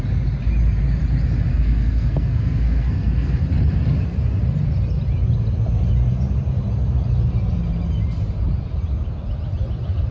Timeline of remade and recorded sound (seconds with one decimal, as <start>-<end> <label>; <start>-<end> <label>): 0.0-1.5 recorded; 1.5-3.4 remade; 3.4-10.1 recorded